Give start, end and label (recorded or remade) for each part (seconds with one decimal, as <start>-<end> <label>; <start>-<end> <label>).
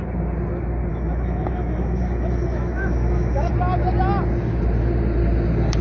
0.0-0.9 recorded; 0.9-3.5 remade; 3.5-5.8 recorded